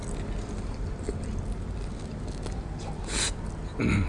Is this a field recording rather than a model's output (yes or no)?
yes